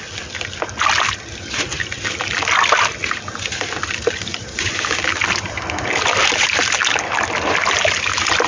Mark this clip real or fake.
real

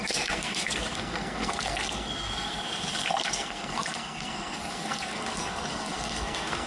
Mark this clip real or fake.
fake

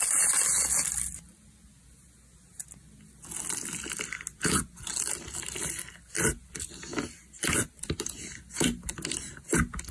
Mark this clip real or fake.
real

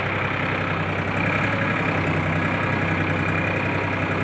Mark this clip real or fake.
real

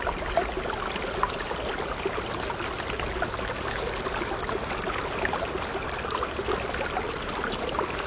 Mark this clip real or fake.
real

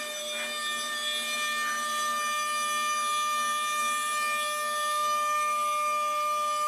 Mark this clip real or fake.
real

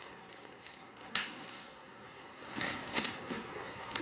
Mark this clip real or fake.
fake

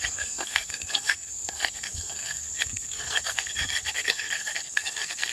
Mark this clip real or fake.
fake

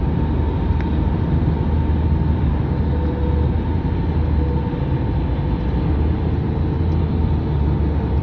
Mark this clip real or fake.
real